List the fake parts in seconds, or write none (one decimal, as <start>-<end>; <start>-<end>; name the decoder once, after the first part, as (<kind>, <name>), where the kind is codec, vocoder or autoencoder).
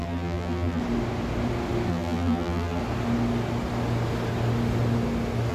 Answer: 0.0-0.8 (vocoder, BigVGAN v2); 1.9-2.8